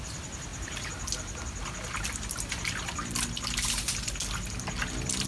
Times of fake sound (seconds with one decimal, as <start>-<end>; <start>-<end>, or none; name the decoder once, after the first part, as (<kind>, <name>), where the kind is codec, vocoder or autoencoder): none